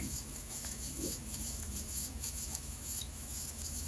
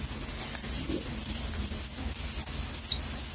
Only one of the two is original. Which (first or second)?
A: second